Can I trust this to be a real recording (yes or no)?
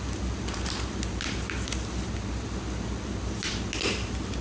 yes